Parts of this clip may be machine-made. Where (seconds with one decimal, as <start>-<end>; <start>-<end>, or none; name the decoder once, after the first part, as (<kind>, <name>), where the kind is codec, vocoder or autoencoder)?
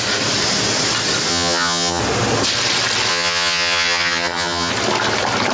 1.3-2.0 (vocoder, HiFi-GAN); 3.1-4.7